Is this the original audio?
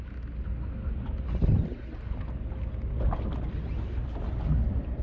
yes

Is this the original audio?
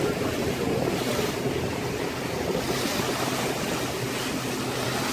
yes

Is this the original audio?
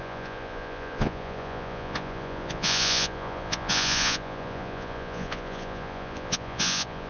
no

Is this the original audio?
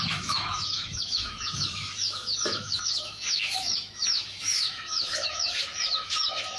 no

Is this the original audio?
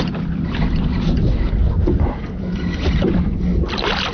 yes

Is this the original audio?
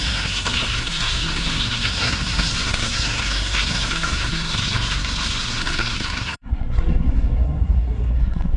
no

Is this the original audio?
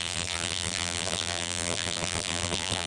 no